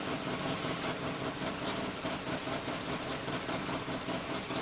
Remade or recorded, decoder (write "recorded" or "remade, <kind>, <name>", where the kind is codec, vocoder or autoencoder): recorded